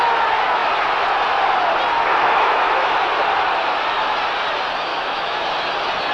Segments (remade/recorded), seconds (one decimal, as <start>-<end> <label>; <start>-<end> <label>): 0.0-2.1 recorded; 2.1-3.0 remade; 3.0-4.9 recorded; 4.9-5.5 remade; 5.5-6.1 recorded